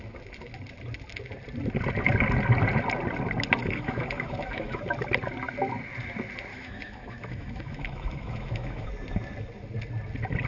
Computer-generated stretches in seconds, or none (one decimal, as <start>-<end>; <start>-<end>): 3.6-4.8; 6.5-8.9